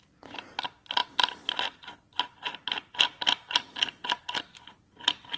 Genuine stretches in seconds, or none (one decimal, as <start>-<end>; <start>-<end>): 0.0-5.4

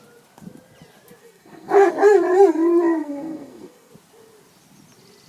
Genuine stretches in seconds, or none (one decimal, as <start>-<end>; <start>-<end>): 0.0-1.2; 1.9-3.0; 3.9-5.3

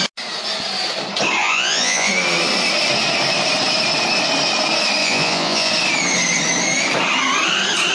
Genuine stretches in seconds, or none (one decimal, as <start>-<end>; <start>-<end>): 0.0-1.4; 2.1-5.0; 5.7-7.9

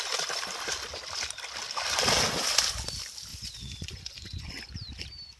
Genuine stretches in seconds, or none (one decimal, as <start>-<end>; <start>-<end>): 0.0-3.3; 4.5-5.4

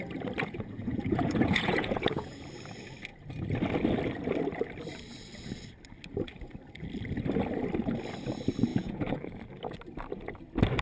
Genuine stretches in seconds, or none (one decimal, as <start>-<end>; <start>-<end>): 0.0-0.4; 2.3-8.7; 9.6-10.8

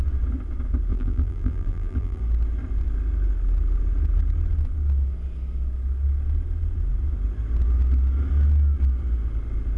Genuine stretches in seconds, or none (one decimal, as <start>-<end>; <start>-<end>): 0.0-0.9; 2.2-9.8

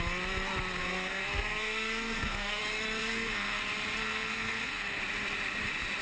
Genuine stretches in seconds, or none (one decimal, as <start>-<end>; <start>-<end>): 0.0-0.8; 2.6-3.0; 3.6-4.0; 5.0-6.0

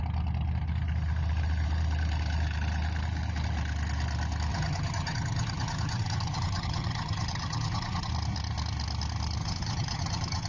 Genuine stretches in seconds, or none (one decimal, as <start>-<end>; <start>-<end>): 0.0-4.5; 8.1-9.4